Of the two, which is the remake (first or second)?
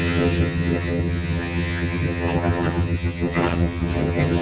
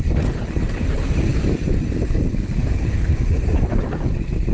first